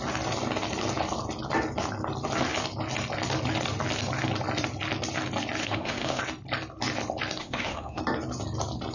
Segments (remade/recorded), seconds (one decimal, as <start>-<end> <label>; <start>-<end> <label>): 0.0-5.6 recorded; 5.6-6.2 remade; 6.2-7.4 recorded; 7.4-8.0 remade; 8.0-8.9 recorded